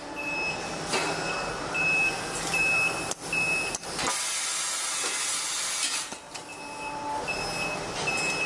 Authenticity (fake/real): real